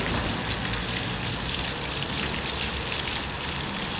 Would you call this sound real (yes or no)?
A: yes